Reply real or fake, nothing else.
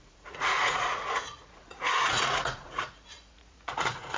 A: fake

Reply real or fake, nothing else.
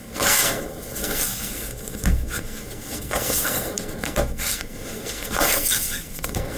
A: fake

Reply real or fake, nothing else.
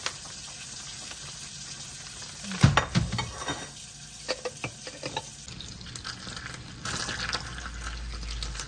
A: real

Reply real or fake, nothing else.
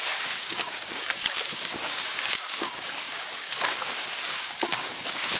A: fake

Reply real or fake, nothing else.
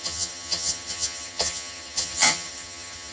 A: fake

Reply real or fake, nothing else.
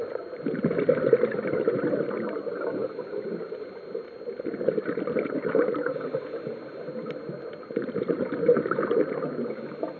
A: real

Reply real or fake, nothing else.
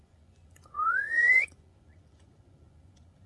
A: fake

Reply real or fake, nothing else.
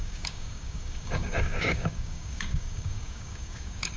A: fake